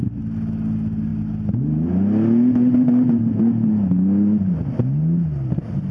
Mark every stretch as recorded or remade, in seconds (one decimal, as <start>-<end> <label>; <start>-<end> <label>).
0.0-5.9 recorded

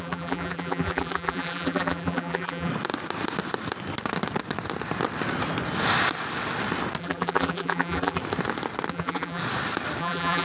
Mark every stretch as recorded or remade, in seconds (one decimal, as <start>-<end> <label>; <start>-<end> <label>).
0.0-2.7 remade; 2.7-7.0 recorded; 7.0-8.2 remade; 8.2-8.9 recorded; 8.9-9.4 remade; 9.4-10.0 recorded; 10.0-10.4 remade

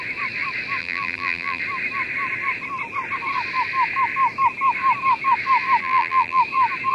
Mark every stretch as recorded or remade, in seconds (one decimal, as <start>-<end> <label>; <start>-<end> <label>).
0.0-0.8 recorded; 0.8-1.6 remade; 1.6-5.8 recorded; 5.8-6.4 remade; 6.4-6.9 recorded

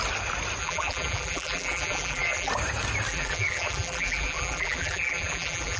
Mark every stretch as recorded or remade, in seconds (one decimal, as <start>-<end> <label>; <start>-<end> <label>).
0.0-0.6 recorded; 0.6-2.5 remade; 2.5-3.1 recorded; 3.1-5.8 remade